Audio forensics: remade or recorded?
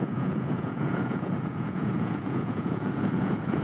remade